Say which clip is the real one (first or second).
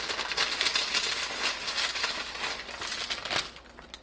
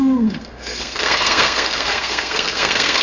first